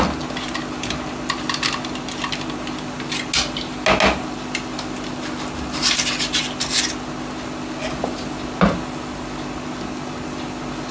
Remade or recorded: recorded